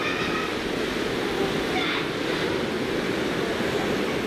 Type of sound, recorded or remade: recorded